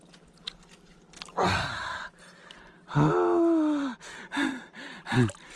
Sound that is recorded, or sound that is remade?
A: recorded